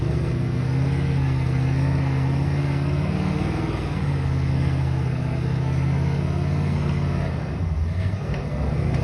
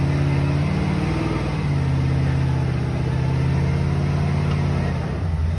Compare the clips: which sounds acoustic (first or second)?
second